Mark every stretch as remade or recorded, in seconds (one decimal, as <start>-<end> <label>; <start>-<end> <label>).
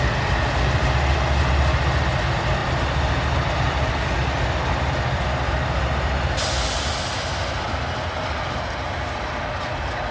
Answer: 0.0-2.6 recorded; 2.6-3.9 remade; 3.9-10.1 recorded